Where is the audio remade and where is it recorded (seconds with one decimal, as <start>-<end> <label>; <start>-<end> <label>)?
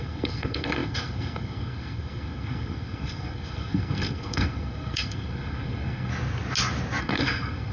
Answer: 0.0-6.1 remade; 6.1-7.0 recorded; 7.0-7.7 remade